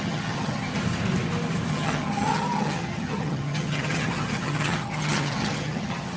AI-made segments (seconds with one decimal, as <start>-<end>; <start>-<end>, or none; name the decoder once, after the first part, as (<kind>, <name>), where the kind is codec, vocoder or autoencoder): 0.0-0.7 (vocoder, HiFi-GAN); 1.7-6.2